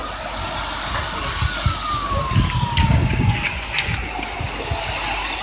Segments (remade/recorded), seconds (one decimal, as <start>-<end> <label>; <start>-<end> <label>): 0.0-3.0 recorded; 3.0-4.1 remade; 4.1-5.4 recorded